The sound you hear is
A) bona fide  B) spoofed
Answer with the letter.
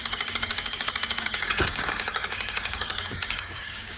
B